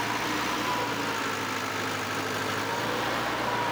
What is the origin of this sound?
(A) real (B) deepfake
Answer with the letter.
A